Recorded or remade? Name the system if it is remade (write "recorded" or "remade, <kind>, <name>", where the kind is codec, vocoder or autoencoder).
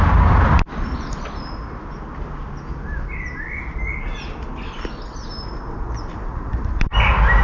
recorded